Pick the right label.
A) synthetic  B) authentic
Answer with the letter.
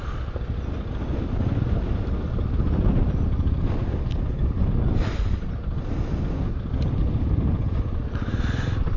B